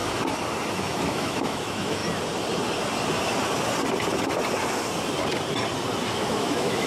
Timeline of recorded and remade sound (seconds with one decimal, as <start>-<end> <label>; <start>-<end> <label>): 0.0-0.7 recorded; 0.7-2.0 remade; 2.0-6.1 recorded; 6.1-6.9 remade